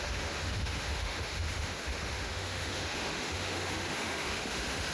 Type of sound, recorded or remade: remade